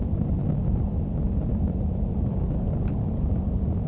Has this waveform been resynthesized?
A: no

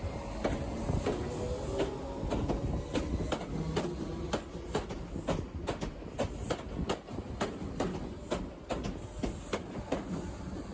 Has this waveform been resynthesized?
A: no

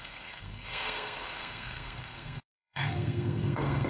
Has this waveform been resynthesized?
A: yes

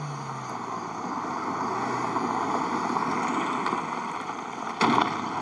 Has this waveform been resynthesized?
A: no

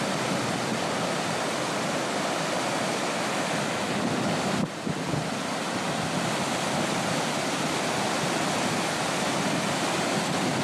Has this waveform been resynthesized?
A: no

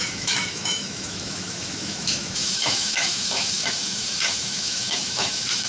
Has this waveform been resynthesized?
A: yes